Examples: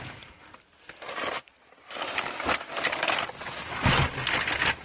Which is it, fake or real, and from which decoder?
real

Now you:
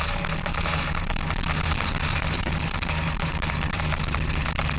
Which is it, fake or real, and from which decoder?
fake, vocoder, BigVGAN v2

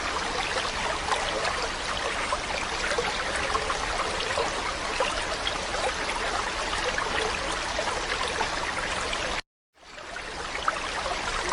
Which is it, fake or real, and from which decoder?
real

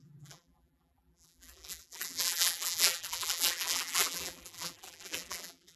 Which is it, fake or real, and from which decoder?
fake, vocoder, BigVGAN v2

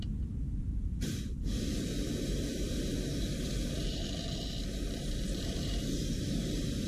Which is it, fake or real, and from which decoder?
fake, vocoder, BigVGAN v2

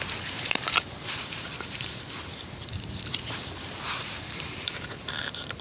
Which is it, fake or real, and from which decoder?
fake, vocoder, BigVGAN v2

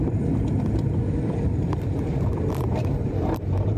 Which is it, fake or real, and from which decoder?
fake, vocoder, BigVGAN v2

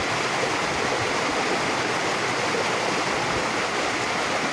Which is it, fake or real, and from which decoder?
real